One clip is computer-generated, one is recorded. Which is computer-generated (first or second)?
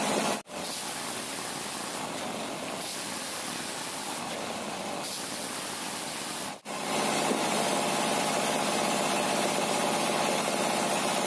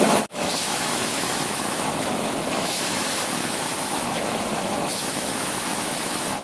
second